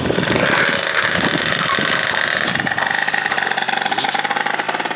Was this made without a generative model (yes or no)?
yes